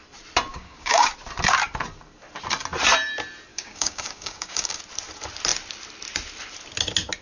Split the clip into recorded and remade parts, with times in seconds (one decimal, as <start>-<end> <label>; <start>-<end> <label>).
0.0-0.5 recorded; 0.5-1.1 remade; 1.1-3.5 recorded; 3.5-4.8 remade; 4.8-7.2 recorded